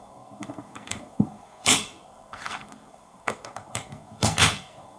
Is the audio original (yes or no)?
no